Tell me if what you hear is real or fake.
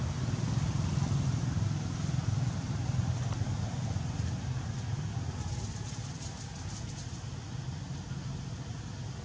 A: real